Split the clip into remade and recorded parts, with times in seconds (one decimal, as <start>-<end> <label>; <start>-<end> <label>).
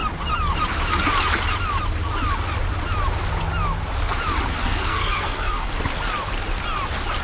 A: 0.0-4.5 recorded; 4.5-5.7 remade; 5.7-7.2 recorded